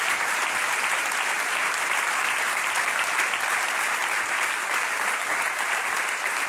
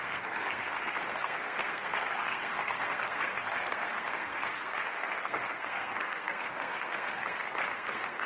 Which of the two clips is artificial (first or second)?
second